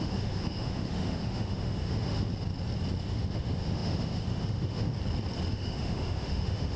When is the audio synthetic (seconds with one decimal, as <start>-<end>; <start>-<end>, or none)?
0.0-2.3; 3.0-4.9; 5.5-6.8